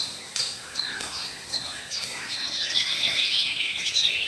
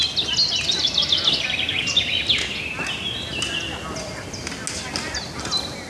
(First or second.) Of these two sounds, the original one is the second